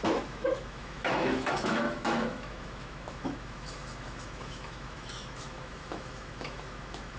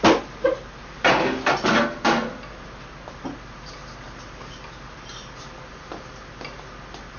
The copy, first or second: first